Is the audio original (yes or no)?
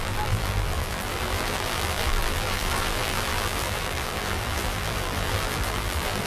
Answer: no